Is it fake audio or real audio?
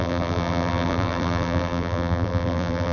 fake